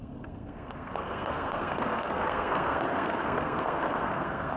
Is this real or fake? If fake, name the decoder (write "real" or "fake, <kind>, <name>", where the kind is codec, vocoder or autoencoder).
fake, codec, SNAC